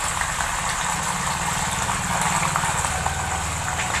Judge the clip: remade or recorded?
recorded